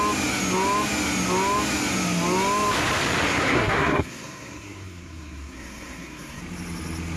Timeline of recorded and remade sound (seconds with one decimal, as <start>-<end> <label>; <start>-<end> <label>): 0.0-3.3 recorded; 3.3-6.4 remade; 6.4-7.2 recorded